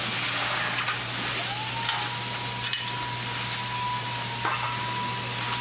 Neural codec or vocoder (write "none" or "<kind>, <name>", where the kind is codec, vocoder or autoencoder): none